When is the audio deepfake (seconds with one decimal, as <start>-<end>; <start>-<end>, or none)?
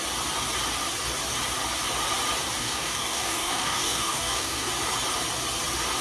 2.6-4.7